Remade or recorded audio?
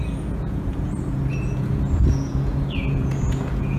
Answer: remade